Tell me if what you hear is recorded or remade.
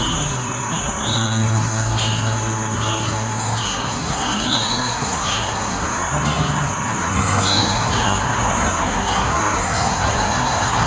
remade